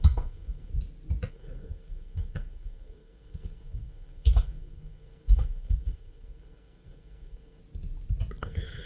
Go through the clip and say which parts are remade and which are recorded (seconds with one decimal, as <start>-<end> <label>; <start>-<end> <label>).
0.0-0.7 remade; 0.7-1.3 recorded; 1.3-7.6 remade; 7.6-8.4 recorded; 8.4-8.9 remade